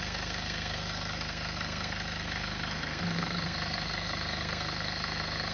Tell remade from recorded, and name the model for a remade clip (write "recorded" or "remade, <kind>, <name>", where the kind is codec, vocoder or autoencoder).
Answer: remade, codec, SNAC